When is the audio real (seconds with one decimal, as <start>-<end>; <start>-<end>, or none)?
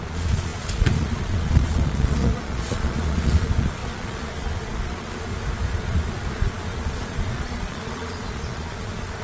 5.3-5.8